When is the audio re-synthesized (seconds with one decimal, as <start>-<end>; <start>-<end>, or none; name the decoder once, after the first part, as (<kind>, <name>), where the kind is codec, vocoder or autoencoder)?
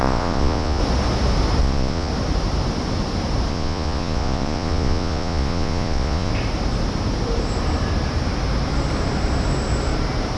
0.0-0.8 (vocoder, Vocos); 1.6-2.1; 3.5-6.3